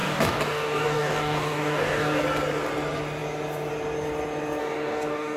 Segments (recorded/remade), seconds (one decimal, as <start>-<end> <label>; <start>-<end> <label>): 0.0-2.2 remade; 2.2-4.6 recorded; 4.6-5.4 remade